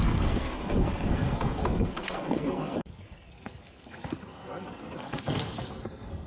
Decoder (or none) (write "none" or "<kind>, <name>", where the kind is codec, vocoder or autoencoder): codec, SNAC